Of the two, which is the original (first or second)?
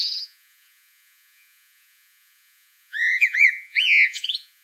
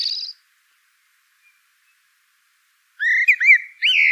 second